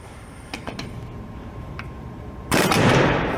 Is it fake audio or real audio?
fake